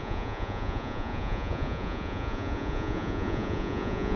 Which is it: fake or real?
fake